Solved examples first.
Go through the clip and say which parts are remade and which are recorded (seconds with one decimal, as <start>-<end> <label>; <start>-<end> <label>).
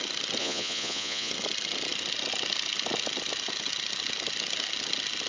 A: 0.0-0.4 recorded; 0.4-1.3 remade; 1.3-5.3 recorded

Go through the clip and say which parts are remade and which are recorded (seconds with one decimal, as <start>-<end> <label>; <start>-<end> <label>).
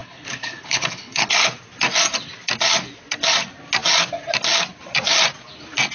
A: 0.0-1.5 remade; 1.5-5.9 recorded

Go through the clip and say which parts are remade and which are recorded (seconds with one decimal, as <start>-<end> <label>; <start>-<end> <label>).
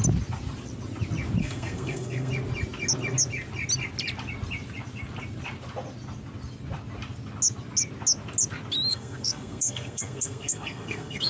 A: 0.0-1.4 recorded; 1.4-2.3 remade; 2.3-8.9 recorded; 8.9-11.3 remade